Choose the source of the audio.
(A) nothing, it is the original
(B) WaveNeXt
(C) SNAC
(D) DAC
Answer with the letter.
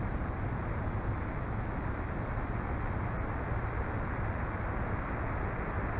A